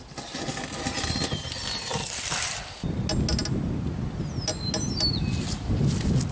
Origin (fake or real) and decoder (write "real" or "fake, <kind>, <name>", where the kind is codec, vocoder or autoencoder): real